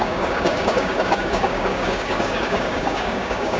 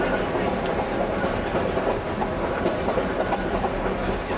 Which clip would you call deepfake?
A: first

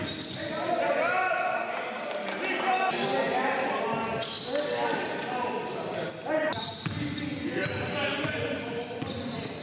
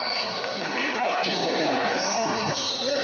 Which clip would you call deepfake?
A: second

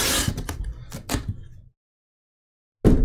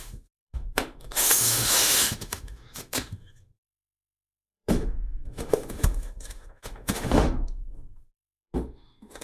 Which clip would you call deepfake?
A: second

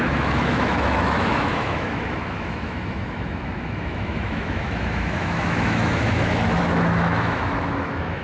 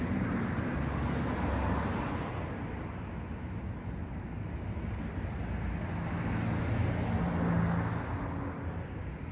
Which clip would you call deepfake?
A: first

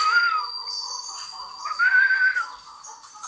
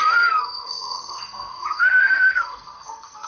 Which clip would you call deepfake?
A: second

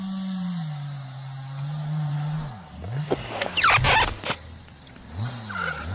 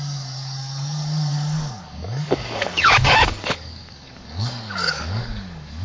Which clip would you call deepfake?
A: second